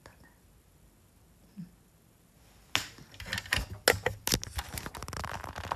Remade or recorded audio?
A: recorded